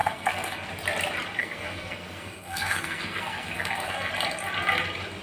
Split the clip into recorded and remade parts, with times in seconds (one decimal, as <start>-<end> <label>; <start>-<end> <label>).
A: 0.0-0.7 remade; 0.7-1.4 recorded; 1.4-4.1 remade; 4.1-5.2 recorded